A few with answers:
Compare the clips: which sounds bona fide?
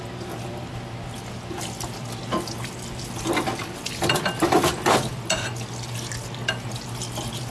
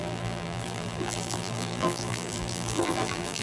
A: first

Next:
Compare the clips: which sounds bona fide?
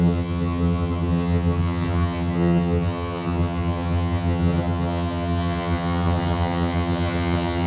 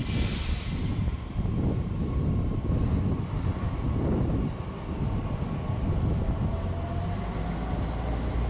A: second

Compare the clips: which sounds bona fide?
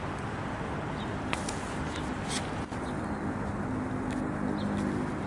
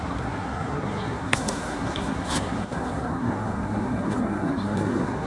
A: first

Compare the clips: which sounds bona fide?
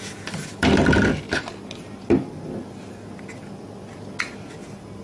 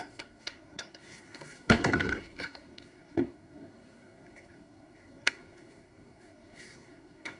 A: first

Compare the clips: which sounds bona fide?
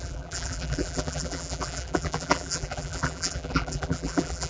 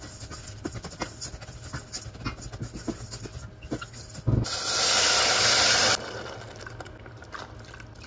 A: second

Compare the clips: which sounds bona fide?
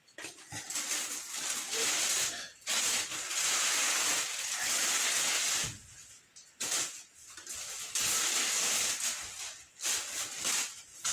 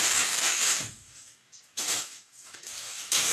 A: first